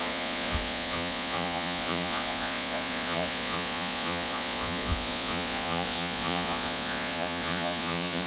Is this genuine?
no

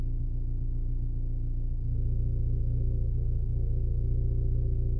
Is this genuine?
yes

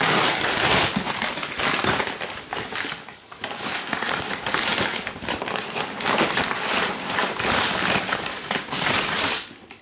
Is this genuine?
no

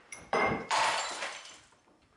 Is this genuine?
no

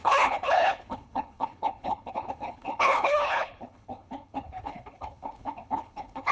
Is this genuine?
no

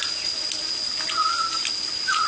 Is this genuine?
yes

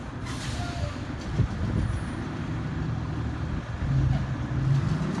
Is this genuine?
yes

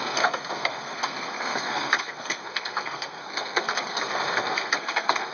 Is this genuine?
no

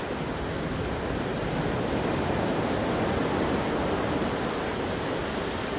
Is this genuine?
yes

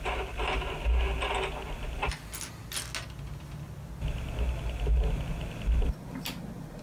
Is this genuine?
yes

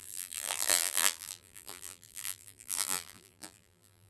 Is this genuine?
no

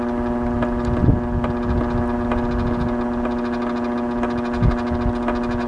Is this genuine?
yes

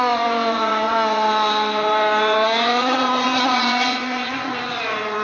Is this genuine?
no